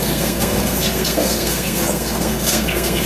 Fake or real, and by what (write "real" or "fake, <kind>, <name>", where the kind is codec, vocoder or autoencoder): fake, codec, SNAC